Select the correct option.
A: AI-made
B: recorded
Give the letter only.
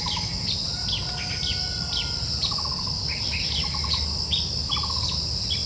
B